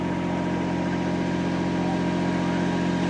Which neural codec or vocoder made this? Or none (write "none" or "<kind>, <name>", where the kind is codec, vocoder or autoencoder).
none